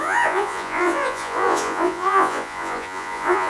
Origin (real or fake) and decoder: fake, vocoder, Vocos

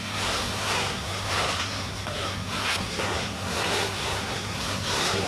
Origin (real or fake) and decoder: fake, codec, SNAC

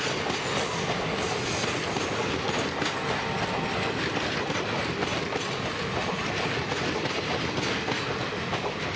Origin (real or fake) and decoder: real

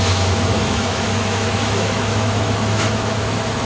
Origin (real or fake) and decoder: fake, autoencoder, DAC-VAE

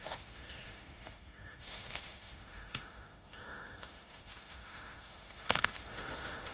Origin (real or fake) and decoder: fake, autoencoder, DAC-VAE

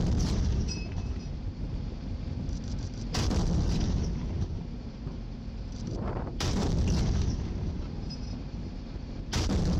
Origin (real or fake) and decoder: fake, vocoder, BigVGAN v2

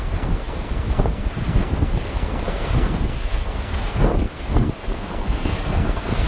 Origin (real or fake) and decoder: fake, codec, SNAC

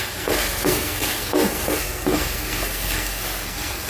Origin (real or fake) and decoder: fake, codec, SNAC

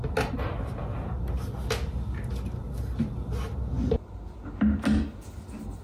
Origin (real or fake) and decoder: real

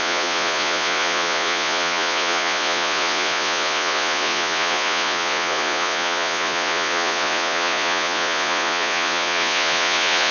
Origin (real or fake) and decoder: fake, vocoder, Vocos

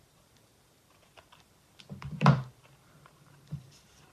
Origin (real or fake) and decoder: fake, vocoder, BigVGAN v2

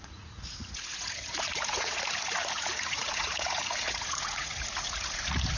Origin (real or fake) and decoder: fake, vocoder, Vocos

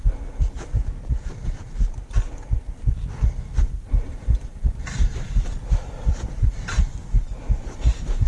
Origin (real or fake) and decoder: real